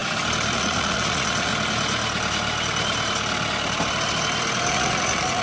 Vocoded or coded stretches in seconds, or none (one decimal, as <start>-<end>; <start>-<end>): 0.5-1.5; 4.7-5.4